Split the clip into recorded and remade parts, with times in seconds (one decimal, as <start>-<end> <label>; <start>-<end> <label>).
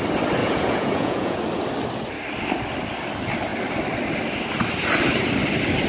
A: 0.0-0.4 recorded; 0.4-1.4 remade; 1.4-5.9 recorded